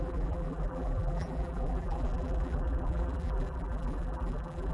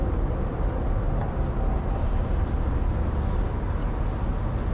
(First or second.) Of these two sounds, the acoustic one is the second